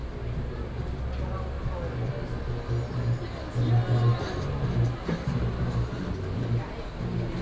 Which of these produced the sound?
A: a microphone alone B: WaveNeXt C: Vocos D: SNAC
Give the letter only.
A